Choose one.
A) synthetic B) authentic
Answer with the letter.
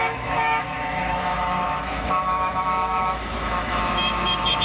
A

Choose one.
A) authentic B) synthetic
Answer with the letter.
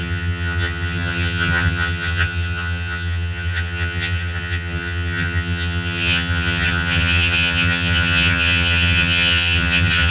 B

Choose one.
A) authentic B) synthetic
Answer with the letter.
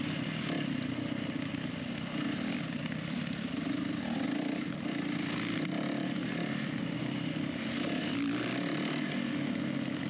A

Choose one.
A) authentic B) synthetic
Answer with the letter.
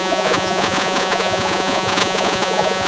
B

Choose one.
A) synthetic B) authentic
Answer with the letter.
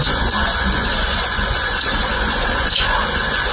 A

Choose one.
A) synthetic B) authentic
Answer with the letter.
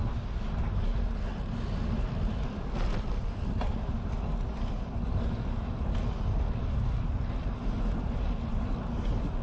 B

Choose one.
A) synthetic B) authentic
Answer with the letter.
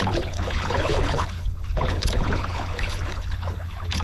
A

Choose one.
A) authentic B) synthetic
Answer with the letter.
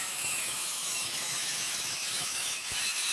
B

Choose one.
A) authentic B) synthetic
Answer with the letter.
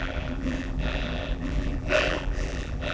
B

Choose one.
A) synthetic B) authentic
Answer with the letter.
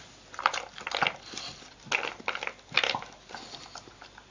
B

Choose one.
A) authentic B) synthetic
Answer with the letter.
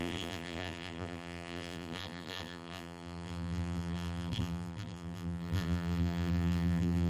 B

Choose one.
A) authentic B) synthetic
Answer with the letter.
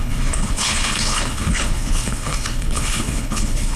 B